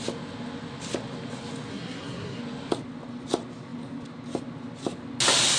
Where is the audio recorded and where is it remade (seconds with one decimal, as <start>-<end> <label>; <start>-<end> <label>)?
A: 0.0-1.7 recorded; 1.7-2.4 remade; 2.4-5.6 recorded